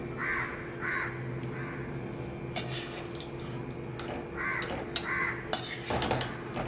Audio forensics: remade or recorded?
recorded